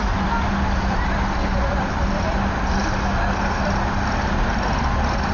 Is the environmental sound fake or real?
fake